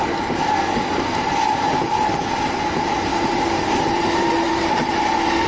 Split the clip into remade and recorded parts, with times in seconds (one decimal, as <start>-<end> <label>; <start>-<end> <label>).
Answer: 0.0-3.1 recorded; 3.1-5.0 remade; 5.0-5.5 recorded